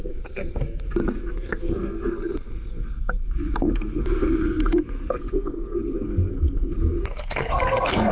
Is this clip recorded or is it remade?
remade